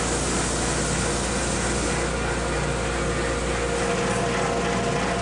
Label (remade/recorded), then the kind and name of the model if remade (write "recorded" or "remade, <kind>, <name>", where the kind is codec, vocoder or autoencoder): recorded